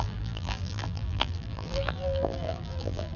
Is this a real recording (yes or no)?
no